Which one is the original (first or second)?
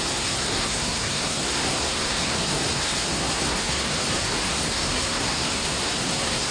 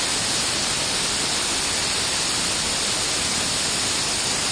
second